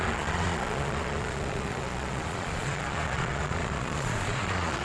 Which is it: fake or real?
fake